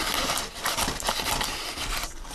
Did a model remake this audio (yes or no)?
no